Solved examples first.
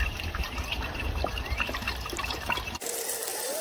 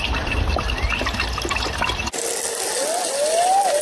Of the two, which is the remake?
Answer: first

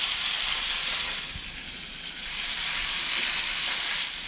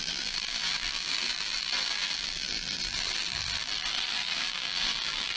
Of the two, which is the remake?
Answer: second